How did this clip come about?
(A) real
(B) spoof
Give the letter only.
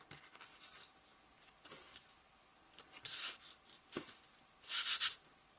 A